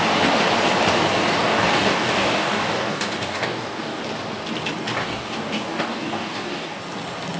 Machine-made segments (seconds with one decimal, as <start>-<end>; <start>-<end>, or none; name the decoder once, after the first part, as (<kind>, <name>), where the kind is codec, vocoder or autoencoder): 1.4-4.0 (codec, DAC); 5.0-6.8